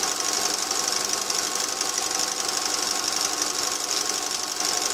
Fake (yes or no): no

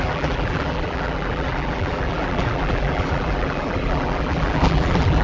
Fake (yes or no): yes